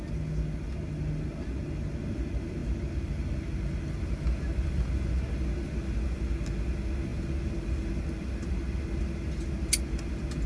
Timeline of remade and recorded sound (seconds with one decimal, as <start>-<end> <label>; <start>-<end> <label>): 0.0-10.5 recorded